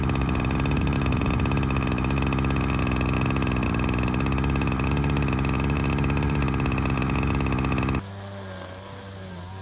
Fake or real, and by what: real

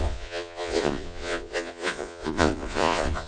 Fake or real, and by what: fake, vocoder, Vocos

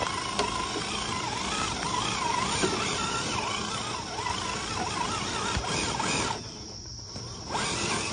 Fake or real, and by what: real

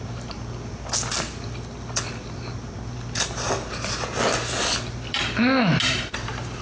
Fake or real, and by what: real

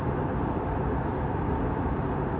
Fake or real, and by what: real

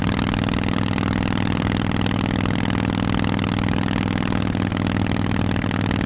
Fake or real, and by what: real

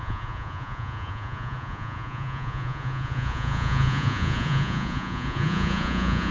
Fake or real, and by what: fake, vocoder, Vocos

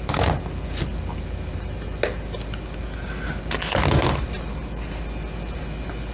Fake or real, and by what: real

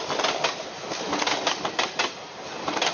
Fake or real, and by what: real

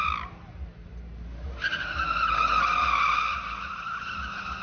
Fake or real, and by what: real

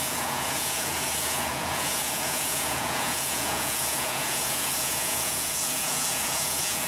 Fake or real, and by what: fake, vocoder, Vocos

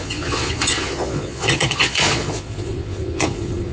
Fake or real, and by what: fake, vocoder, Vocos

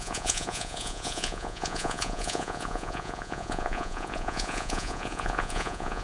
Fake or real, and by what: fake, vocoder, Vocos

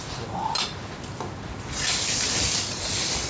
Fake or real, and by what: real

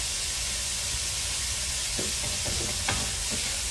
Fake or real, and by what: fake, vocoder, Vocos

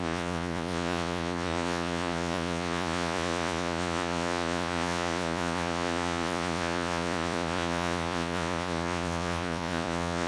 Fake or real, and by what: fake, vocoder, Vocos